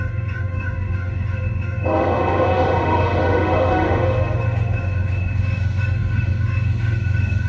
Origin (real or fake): fake